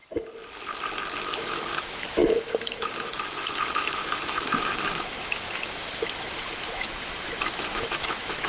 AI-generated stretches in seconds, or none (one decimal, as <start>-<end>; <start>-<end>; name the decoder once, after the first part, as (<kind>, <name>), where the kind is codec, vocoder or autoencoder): 1.2-8.5 (autoencoder, DAC-VAE)